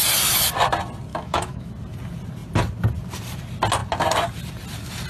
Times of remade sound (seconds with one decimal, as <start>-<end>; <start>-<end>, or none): 1.1-1.7